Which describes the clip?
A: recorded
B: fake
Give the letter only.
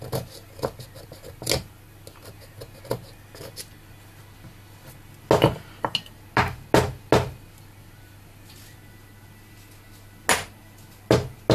A